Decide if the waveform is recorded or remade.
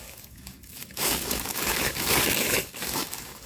remade